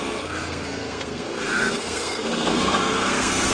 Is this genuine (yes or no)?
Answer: no